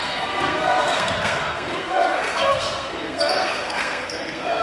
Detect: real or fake fake